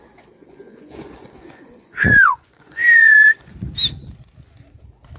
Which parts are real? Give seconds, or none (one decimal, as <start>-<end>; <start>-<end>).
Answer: 0.0-0.4; 3.5-5.2

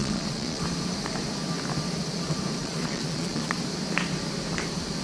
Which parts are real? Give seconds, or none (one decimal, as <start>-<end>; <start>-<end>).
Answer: 0.6-2.6; 3.6-5.0

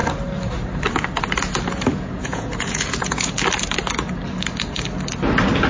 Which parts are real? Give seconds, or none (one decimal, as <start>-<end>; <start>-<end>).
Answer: 0.0-1.9; 3.3-5.7

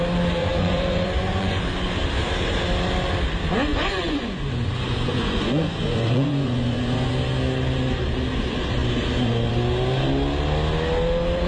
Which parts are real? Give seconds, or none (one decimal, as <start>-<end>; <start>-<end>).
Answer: 0.0-0.4; 1.7-3.7; 7.1-11.5

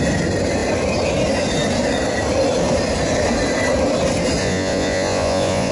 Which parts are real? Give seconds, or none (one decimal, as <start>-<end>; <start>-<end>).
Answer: 0.0-4.4

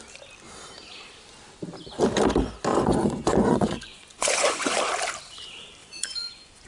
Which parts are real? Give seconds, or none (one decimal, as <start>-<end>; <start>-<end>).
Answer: 0.0-2.7; 4.8-5.8

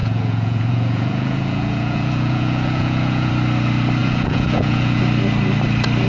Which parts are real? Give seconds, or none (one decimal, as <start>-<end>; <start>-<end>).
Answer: 3.3-4.0; 5.0-6.1